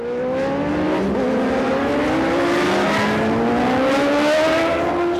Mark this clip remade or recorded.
recorded